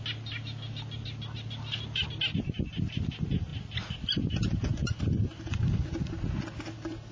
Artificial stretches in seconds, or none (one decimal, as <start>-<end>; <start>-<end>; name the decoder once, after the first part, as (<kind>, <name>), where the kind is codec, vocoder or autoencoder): none